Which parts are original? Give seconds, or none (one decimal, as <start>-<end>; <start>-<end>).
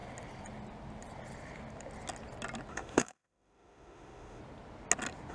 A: 0.0-2.7; 4.4-5.3